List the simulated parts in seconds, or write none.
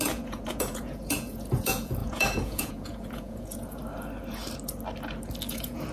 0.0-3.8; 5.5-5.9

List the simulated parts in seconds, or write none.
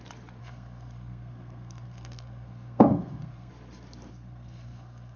0.4-3.5; 4.1-5.2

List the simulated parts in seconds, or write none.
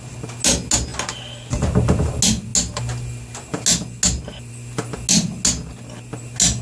none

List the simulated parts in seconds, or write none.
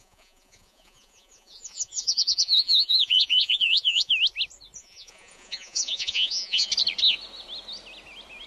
0.0-4.1; 4.8-6.7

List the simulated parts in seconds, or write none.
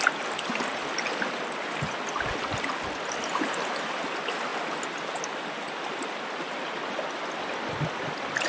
none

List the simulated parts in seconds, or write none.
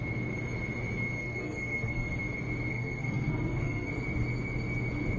1.2-2.2; 2.7-3.9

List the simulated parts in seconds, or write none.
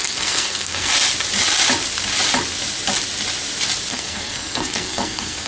0.0-0.9; 3.9-5.5